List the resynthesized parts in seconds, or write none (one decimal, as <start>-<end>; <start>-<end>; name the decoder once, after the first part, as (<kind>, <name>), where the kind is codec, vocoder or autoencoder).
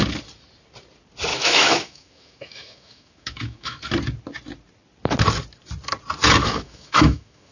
1.3-3.8 (autoencoder, DAC-VAE); 6.4-7.5